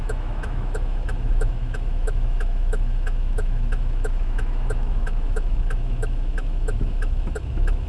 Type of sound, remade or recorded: remade